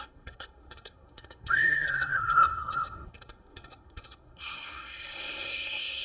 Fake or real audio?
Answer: fake